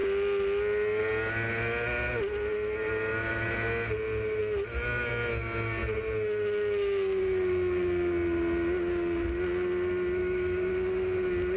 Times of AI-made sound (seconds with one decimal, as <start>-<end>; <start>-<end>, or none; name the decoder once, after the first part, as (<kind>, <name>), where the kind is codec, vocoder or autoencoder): 10.2-10.7 (codec, DAC)